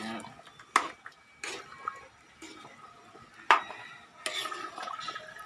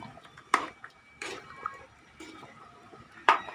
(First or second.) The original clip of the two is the first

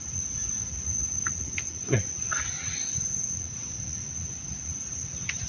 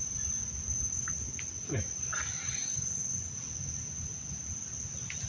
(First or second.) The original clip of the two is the second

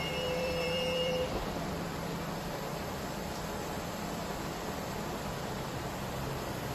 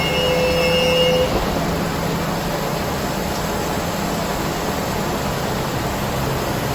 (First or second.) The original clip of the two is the second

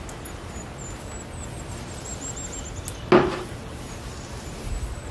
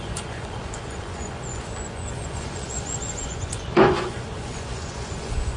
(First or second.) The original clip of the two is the first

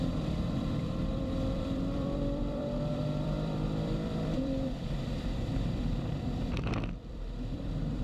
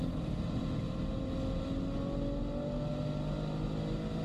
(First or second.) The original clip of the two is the second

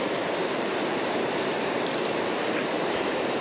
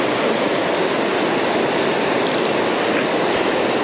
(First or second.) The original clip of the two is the second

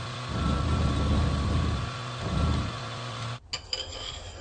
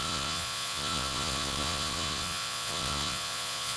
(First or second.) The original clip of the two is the first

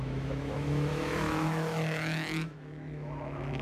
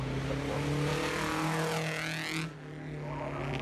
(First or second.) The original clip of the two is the second